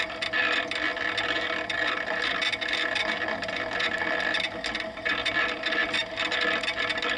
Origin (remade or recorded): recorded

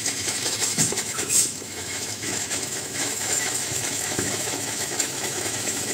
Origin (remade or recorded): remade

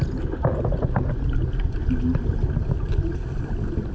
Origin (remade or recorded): recorded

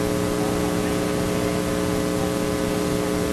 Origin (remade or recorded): recorded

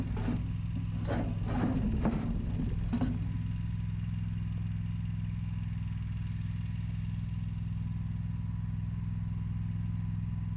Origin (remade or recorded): recorded